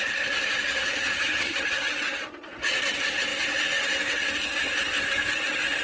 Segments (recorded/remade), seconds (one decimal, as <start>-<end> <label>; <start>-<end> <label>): 0.0-0.8 recorded; 0.8-1.9 remade; 1.9-5.8 recorded